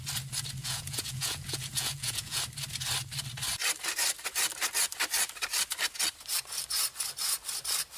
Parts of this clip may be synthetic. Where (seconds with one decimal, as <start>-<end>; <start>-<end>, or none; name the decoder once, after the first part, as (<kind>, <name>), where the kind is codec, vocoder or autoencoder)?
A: 0.6-2.4 (vocoder, Vocos)